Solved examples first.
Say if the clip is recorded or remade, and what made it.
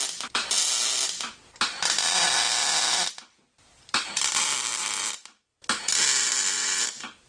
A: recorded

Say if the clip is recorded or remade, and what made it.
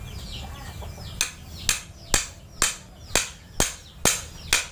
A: recorded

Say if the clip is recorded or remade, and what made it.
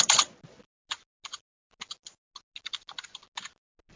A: recorded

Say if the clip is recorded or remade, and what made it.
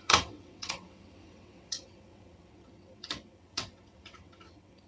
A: remade, vocoder, WaveNeXt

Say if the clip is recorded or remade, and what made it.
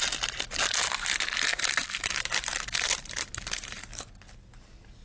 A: recorded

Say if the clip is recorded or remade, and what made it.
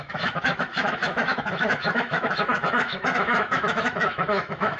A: remade, autoencoder, DAC-VAE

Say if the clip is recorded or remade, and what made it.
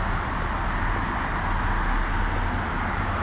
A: recorded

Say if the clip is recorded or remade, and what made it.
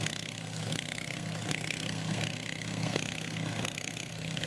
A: remade, codec, SNAC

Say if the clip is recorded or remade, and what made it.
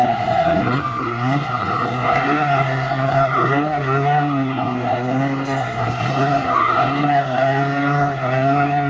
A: remade, codec, SNAC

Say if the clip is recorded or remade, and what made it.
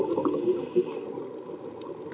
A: recorded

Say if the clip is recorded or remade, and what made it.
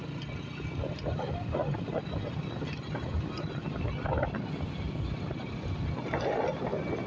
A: recorded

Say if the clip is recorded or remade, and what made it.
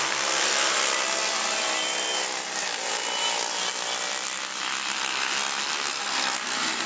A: recorded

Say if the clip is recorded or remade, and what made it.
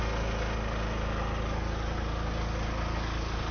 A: recorded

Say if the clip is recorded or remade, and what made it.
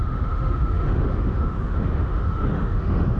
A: remade, autoencoder, DAC-VAE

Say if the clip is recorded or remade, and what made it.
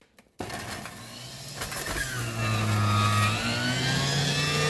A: recorded